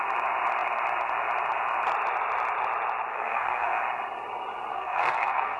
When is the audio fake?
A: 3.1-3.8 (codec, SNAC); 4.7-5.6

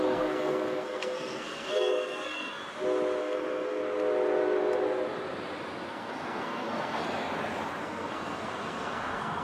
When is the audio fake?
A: 0.0-2.6 (codec, SNAC); 3.2-3.8; 5.9-7.0; 7.8-9.4

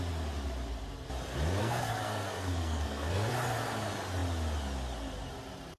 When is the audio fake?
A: 1.6-3.3 (codec, SNAC)